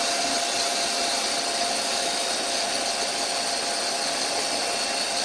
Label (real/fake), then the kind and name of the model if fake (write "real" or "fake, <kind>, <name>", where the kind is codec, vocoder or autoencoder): real